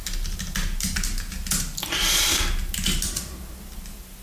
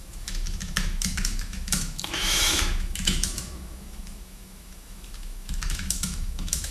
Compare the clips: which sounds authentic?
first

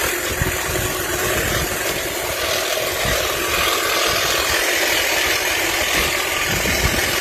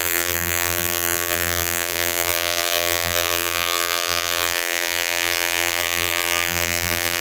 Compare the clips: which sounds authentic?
first